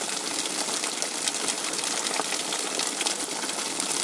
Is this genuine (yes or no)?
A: yes